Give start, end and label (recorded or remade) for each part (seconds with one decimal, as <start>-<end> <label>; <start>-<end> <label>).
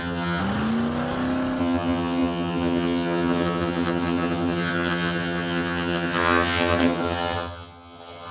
0.0-0.4 remade; 0.4-1.6 recorded; 1.6-8.3 remade